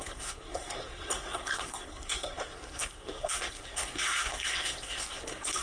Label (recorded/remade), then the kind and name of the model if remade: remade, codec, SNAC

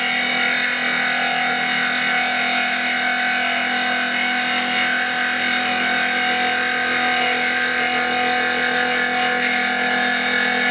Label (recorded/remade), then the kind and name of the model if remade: recorded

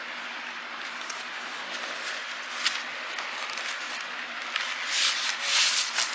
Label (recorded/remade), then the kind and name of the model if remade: recorded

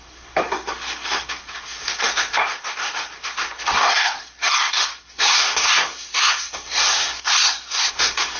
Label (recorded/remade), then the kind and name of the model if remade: remade, codec, SNAC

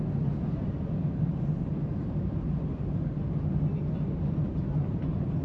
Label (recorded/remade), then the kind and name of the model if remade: recorded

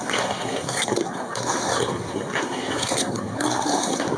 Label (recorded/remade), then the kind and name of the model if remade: remade, codec, SNAC